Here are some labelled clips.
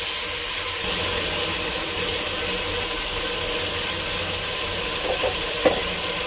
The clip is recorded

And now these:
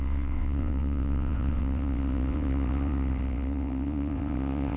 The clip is remade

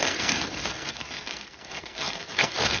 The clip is remade